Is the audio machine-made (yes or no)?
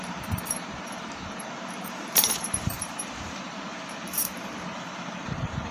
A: yes